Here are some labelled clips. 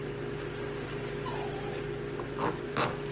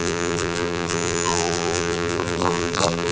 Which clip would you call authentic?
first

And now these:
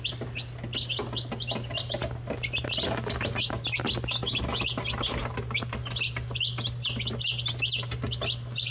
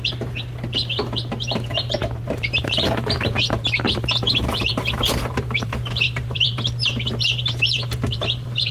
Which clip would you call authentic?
first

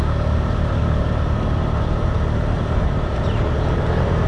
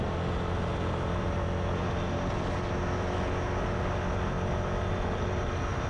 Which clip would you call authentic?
second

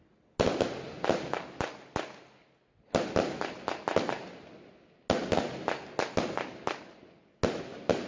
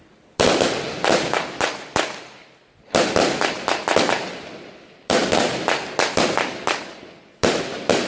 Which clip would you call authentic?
first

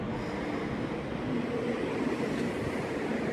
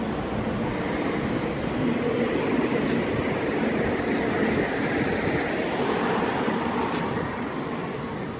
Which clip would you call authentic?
first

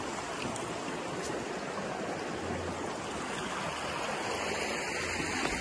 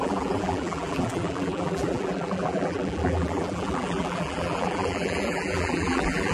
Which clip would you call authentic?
first